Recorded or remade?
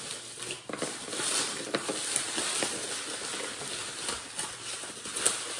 recorded